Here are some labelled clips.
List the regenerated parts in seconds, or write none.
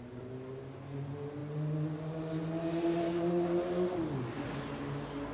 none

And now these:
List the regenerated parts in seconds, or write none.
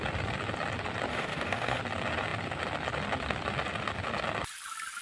1.1-1.8 (autoencoder, DAC-VAE)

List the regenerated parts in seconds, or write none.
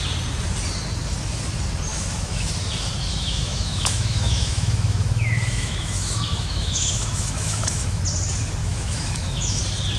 1.9-2.5 (autoencoder, DAC-VAE); 3.1-8.0; 8.6-9.6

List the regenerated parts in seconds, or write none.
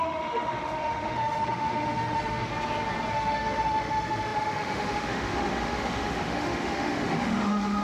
0.0-2.5 (autoencoder, DAC-VAE); 3.1-7.8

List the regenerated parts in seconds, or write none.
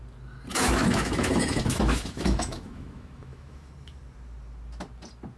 0.5-3.7 (autoencoder, DAC-VAE)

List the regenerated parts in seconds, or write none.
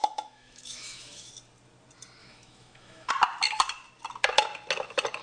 0.0-1.3 (autoencoder, DAC-VAE); 2.2-3.1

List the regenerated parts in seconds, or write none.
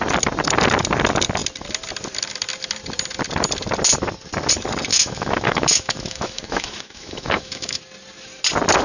4.9-7.8 (autoencoder, DAC-VAE)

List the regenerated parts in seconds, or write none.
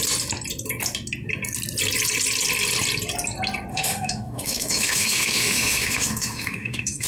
3.7-7.1 (autoencoder, DAC-VAE)